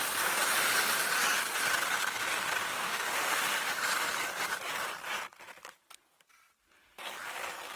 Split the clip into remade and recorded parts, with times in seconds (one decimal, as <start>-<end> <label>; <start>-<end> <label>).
0.0-2.7 recorded; 2.7-3.4 remade; 3.4-7.8 recorded